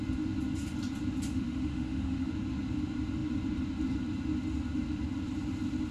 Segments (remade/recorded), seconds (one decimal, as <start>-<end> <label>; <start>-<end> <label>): 0.0-1.3 recorded; 1.3-2.3 remade; 2.3-5.9 recorded